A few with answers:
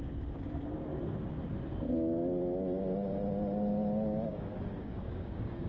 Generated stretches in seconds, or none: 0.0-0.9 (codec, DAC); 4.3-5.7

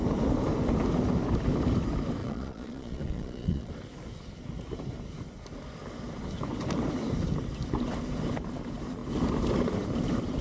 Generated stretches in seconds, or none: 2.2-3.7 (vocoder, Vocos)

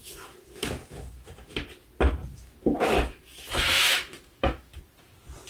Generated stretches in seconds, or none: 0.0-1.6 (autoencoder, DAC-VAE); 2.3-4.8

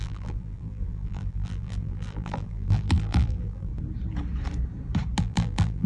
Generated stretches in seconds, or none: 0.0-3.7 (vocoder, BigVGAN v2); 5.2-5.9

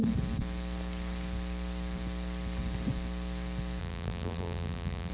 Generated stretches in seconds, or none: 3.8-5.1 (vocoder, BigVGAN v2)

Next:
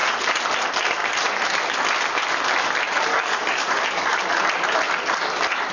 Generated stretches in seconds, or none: 3.1-4.2 (codec, DAC)

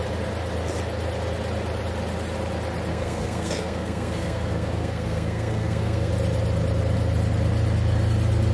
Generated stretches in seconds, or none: 2.9-6.1 (codec, SNAC)

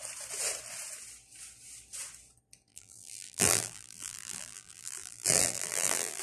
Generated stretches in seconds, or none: 2.7-6.2 (vocoder, BigVGAN v2)